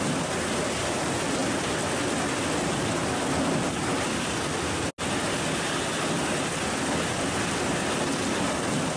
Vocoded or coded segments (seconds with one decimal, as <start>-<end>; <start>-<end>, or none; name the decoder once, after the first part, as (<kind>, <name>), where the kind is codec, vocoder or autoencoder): none